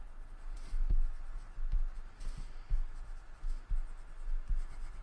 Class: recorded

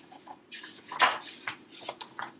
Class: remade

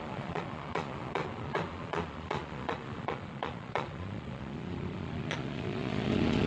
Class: remade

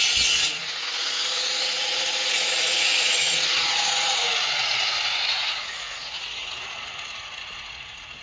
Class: remade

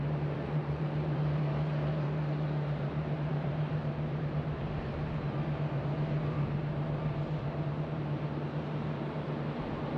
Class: remade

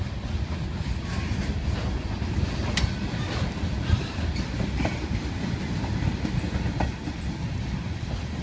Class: recorded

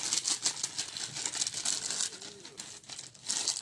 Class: recorded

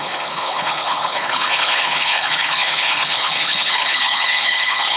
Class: remade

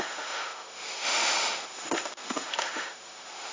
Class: remade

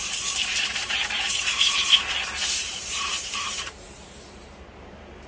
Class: remade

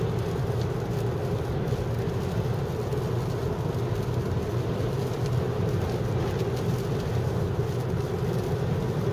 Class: recorded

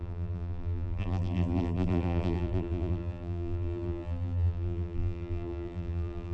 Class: remade